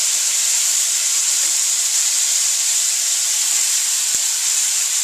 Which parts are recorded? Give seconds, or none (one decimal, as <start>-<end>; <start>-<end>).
3.0-5.0